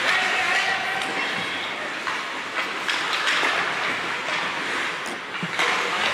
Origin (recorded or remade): recorded